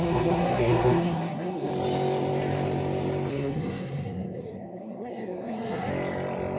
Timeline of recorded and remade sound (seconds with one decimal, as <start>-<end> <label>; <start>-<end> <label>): 0.0-1.7 remade; 1.7-3.3 recorded; 3.3-5.9 remade; 5.9-6.6 recorded